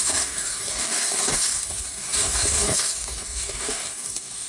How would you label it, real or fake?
fake